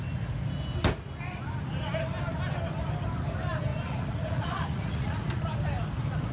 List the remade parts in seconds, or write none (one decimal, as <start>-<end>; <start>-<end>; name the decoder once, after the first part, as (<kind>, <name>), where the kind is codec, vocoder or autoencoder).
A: 3.7-5.2 (vocoder, Vocos)